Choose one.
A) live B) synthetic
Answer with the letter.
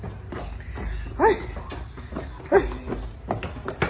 A